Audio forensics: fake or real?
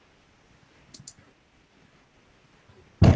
real